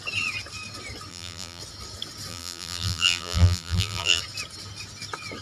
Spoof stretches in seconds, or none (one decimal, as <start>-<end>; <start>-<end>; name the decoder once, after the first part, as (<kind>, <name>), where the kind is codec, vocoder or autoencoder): 1.1-1.6 (vocoder, BigVGAN v2); 2.3-4.2